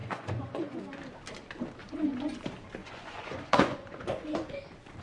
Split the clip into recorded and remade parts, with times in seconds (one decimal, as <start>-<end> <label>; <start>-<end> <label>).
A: 0.0-0.8 remade; 0.8-1.8 recorded; 1.8-2.4 remade; 2.4-2.8 recorded; 2.8-4.6 remade; 4.6-5.0 recorded